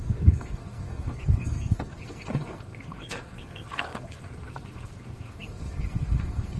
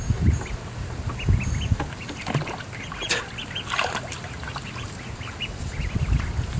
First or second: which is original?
second